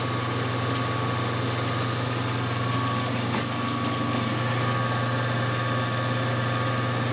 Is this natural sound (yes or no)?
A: yes